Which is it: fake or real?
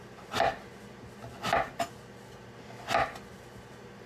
real